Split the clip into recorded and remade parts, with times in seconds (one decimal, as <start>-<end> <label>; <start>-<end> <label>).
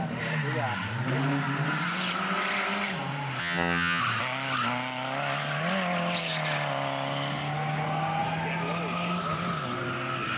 0.0-3.4 recorded; 3.4-4.0 remade; 4.0-10.4 recorded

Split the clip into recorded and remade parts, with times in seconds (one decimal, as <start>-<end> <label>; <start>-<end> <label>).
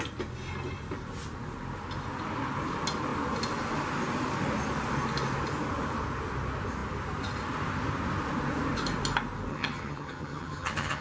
0.0-9.5 recorded; 9.5-11.0 remade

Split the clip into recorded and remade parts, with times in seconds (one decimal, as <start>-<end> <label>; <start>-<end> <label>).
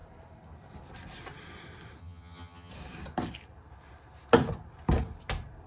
0.0-2.0 recorded; 2.0-2.7 remade; 2.7-5.7 recorded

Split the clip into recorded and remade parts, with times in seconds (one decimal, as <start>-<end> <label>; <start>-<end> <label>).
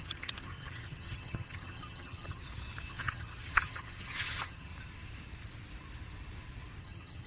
0.0-2.4 remade; 2.4-2.9 recorded; 2.9-4.7 remade; 4.7-6.8 recorded; 6.8-7.3 remade